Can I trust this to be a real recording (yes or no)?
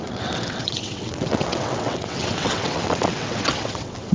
no